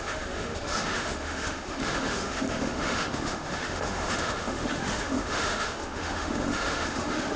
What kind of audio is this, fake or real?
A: fake